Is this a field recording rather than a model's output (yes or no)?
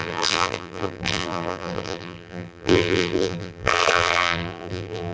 no